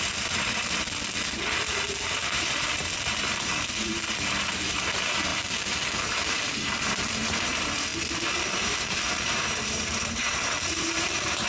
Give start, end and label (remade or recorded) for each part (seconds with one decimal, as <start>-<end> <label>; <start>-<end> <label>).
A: 0.0-7.9 remade; 7.9-8.5 recorded; 8.5-11.5 remade